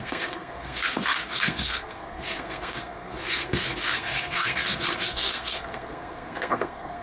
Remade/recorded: remade